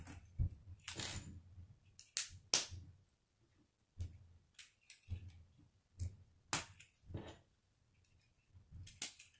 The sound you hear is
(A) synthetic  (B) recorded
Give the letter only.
B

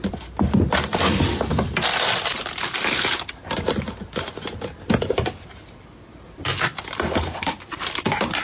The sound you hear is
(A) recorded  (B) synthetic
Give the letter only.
A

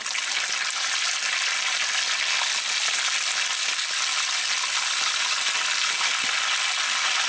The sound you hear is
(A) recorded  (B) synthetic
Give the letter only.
A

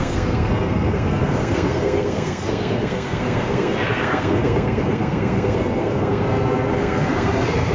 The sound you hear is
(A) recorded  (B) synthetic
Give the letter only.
B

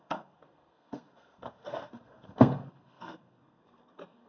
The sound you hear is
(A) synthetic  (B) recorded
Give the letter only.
A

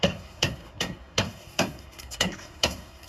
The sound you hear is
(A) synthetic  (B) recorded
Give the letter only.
A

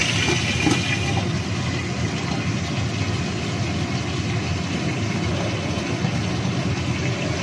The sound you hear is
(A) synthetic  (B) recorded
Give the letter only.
B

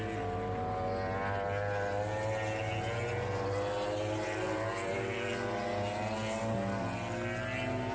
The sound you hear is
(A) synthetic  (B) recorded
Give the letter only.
B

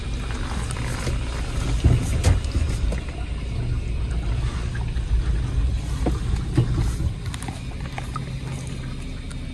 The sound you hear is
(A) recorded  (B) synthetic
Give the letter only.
A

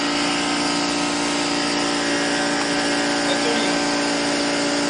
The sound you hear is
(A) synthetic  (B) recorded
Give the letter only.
B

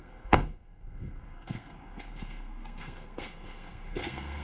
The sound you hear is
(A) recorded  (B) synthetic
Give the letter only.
B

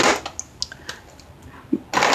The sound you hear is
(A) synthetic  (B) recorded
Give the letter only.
B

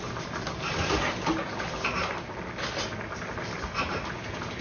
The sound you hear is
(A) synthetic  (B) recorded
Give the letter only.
B